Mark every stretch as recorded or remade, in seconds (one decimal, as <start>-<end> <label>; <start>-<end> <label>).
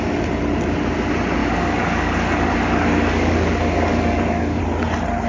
0.0-1.4 recorded; 1.4-4.6 remade; 4.6-5.3 recorded